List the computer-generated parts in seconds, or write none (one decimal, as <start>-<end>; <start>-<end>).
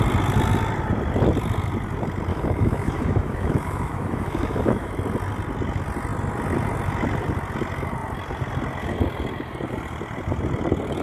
2.3-4.9